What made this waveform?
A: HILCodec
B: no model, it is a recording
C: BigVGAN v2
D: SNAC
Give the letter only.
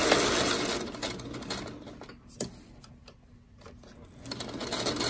B